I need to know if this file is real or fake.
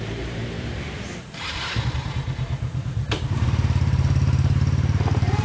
fake